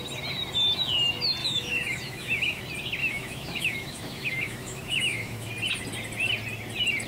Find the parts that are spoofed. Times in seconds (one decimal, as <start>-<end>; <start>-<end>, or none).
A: 1.4-2.6; 3.0-5.5